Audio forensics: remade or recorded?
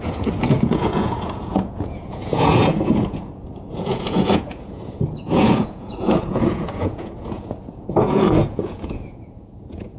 remade